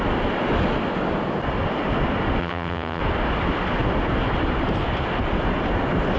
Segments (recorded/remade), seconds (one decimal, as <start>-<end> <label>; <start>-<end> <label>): 0.0-2.4 recorded; 2.4-3.0 remade; 3.0-6.2 recorded